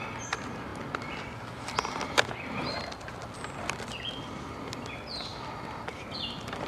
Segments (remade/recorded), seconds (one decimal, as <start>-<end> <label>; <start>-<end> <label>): 0.0-6.7 recorded